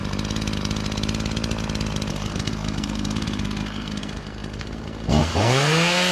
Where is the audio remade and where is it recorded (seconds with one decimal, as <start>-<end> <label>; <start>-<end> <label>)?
0.0-2.1 recorded; 2.1-6.1 remade